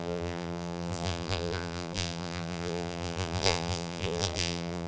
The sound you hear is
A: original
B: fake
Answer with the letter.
B